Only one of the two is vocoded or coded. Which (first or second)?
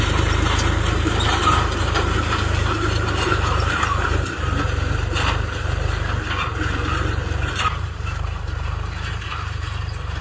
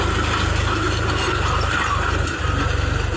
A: first